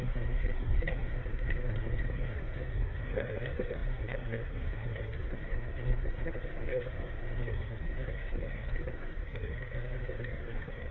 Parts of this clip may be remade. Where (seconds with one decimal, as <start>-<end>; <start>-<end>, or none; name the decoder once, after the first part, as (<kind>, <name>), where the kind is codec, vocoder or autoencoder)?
0.0-10.9 (codec, SNAC)